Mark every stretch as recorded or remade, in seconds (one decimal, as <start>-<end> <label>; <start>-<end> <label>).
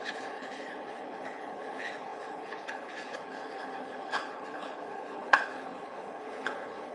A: 0.0-6.9 remade